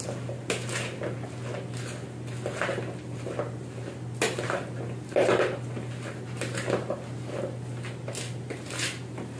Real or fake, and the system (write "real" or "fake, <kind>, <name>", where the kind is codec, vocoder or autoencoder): real